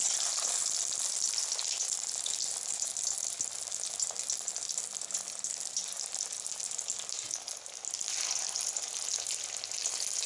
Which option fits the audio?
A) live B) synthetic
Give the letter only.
A